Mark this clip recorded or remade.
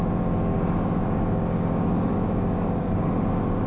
remade